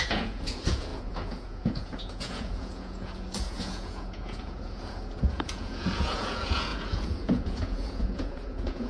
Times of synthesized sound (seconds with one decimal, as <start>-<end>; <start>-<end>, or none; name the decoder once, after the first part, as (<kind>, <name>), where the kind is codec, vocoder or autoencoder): 0.0-8.9 (vocoder, Vocos)